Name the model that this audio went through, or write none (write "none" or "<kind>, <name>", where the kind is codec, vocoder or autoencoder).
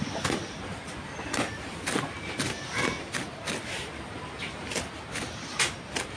none